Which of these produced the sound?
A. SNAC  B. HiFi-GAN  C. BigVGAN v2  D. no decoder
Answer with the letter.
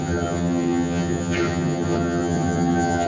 B